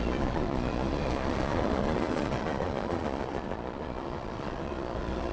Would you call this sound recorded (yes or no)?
no